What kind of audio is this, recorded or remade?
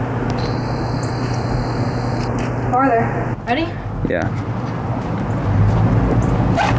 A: recorded